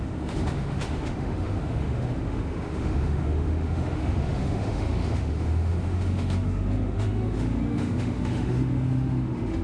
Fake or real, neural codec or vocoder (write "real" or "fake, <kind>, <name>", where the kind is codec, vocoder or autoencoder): fake, autoencoder, DAC-VAE